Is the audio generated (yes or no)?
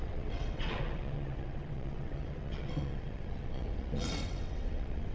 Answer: yes